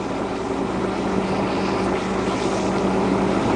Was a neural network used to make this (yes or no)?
no